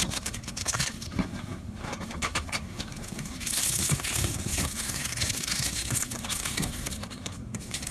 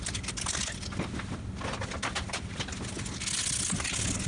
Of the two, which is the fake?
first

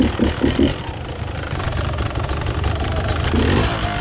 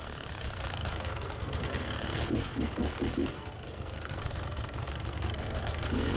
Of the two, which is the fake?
second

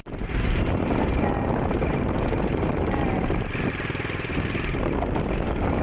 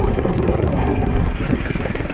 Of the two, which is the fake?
second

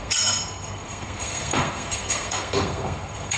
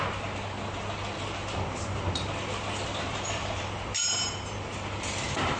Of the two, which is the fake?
first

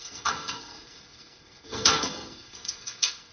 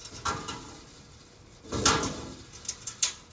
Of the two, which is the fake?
first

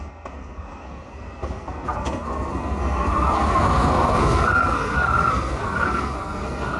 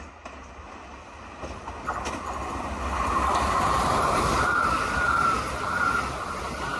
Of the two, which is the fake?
first